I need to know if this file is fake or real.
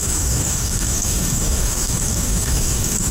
fake